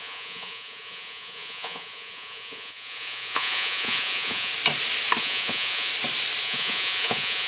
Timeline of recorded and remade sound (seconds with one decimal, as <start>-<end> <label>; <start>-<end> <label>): 0.0-4.5 remade; 4.5-5.2 recorded; 5.2-5.9 remade; 5.9-6.4 recorded; 6.4-7.5 remade